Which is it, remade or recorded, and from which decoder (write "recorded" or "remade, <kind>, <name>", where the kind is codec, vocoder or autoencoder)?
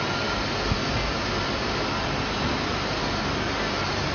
recorded